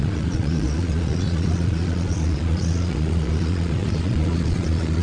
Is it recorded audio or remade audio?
remade